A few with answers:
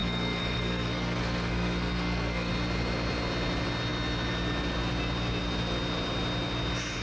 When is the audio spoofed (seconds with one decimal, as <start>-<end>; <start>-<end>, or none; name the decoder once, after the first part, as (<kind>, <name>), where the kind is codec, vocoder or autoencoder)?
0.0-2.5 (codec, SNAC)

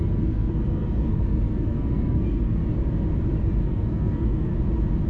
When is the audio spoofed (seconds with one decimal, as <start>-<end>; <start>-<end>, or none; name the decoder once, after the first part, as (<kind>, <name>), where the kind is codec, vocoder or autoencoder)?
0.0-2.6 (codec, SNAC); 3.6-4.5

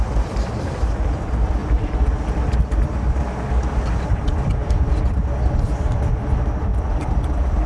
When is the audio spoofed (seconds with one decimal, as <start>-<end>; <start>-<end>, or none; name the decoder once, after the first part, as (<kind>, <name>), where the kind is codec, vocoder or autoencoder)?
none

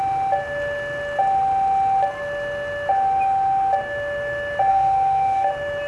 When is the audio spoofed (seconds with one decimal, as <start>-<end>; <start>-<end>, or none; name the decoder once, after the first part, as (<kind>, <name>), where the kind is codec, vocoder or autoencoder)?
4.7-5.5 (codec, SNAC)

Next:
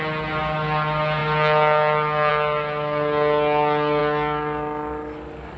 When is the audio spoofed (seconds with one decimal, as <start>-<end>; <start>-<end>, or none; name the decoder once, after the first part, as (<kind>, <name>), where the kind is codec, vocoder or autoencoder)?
none

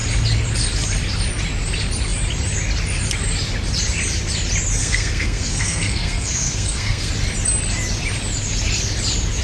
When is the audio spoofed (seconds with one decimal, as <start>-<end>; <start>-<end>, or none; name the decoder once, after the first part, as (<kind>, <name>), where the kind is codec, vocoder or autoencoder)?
4.8-7.1 (codec, SNAC)

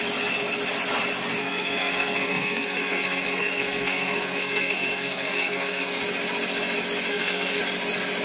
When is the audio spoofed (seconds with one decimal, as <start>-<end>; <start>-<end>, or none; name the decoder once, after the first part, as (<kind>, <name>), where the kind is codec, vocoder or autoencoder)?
1.4-6.0 (codec, SNAC); 7.1-7.6

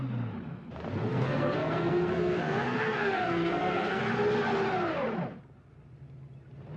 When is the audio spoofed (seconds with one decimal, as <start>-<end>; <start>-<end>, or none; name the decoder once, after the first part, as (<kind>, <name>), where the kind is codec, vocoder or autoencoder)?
1.1-4.0 (codec, SNAC)